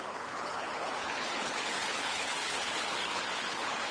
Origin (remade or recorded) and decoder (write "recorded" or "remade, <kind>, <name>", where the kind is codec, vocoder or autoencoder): remade, codec, HILCodec